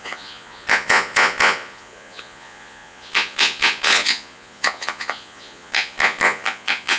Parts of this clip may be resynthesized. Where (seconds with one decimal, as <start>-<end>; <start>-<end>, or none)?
0.0-7.0